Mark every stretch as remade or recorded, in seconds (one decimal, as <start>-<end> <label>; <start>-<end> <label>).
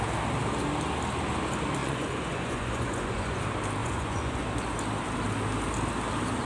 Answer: 0.0-1.8 recorded; 1.8-3.4 remade; 3.4-3.8 recorded; 3.8-4.4 remade; 4.4-6.4 recorded